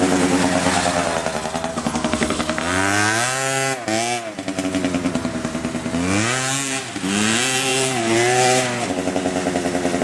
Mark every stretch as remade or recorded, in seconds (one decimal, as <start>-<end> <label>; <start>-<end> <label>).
0.0-1.7 recorded; 1.7-2.6 remade; 2.6-10.0 recorded